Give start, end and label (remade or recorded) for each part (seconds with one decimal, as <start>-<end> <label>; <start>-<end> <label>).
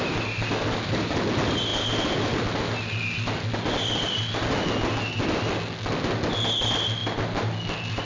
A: 0.0-8.0 recorded